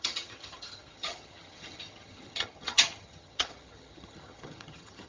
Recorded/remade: remade